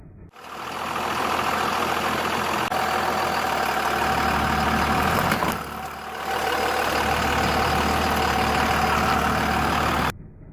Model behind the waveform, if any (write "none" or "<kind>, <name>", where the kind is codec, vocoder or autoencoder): none